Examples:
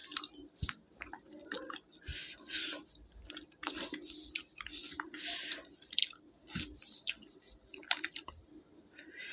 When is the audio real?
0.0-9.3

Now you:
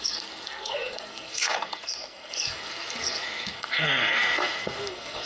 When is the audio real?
none

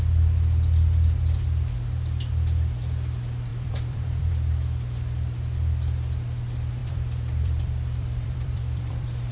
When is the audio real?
0.0-3.5; 4.3-6.8